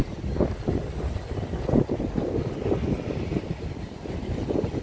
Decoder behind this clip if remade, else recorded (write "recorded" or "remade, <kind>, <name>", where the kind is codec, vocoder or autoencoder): recorded